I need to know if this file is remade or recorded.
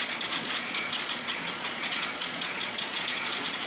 remade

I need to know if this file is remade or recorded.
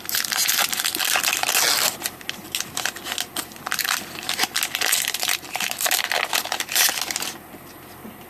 recorded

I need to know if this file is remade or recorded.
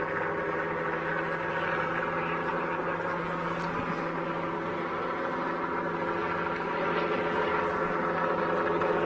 remade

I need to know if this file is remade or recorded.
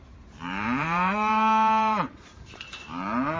remade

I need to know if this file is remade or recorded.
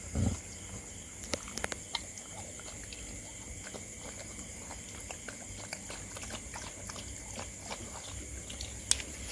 recorded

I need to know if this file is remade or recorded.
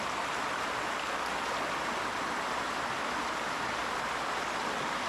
recorded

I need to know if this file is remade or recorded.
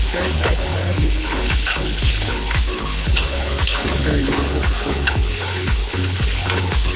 remade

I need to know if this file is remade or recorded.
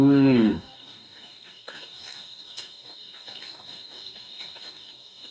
remade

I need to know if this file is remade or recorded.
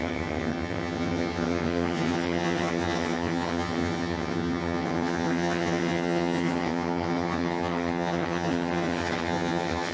remade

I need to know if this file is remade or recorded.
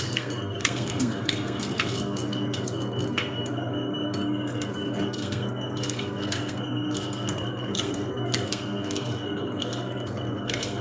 remade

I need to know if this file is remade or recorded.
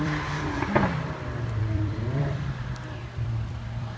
remade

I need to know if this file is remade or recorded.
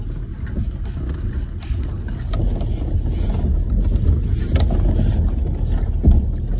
recorded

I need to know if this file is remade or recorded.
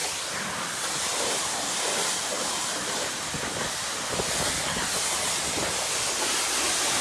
remade